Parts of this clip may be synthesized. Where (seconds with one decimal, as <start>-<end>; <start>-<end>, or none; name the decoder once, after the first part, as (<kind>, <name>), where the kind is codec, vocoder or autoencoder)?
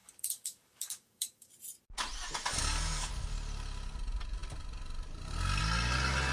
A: 0.0-1.5 (codec, DAC); 2.5-3.1